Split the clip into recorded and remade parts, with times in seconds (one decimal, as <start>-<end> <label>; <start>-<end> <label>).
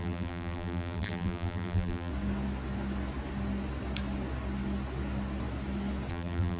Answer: 0.0-2.1 remade; 2.1-6.1 recorded; 6.1-6.6 remade